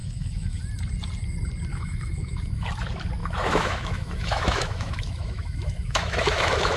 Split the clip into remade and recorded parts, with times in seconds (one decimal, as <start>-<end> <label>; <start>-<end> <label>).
0.0-0.6 remade; 0.6-1.7 recorded; 1.7-2.7 remade; 2.7-3.2 recorded; 3.2-6.8 remade